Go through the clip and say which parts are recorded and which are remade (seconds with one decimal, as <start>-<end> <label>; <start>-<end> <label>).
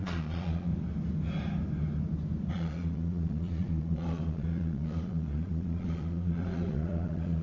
0.0-0.7 remade; 0.7-2.5 recorded; 2.5-7.4 remade